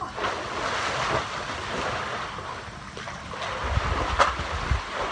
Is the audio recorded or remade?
recorded